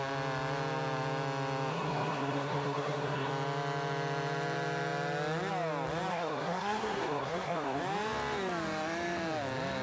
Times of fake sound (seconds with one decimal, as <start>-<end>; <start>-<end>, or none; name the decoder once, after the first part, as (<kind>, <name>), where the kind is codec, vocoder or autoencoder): 1.7-3.3 (codec, SNAC); 6.1-7.8